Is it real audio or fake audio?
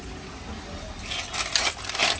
real